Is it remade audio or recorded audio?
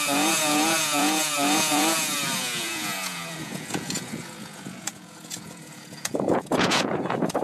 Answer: remade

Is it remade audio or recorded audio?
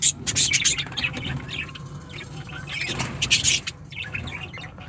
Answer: remade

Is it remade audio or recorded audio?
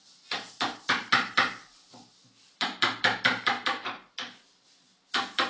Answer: recorded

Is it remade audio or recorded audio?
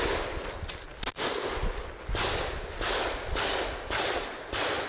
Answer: recorded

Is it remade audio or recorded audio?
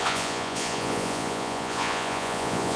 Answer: remade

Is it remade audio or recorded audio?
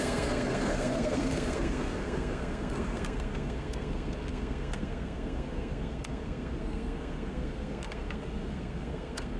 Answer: remade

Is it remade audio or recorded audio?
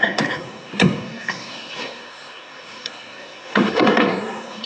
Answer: remade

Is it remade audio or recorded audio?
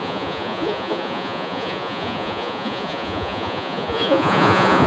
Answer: remade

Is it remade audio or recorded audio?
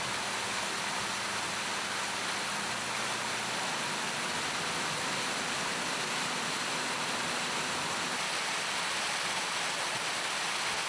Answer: recorded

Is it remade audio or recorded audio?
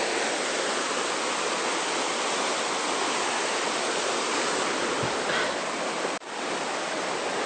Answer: recorded